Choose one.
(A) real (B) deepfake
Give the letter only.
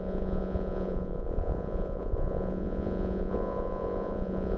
B